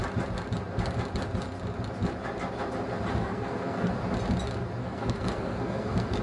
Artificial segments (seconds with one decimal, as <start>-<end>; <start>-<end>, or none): 3.2-3.9; 4.8-6.2